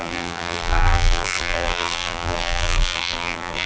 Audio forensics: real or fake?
fake